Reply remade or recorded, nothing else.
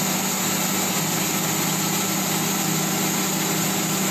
recorded